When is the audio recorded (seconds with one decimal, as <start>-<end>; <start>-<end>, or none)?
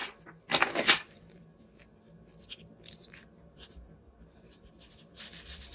0.0-0.7; 1.8-2.9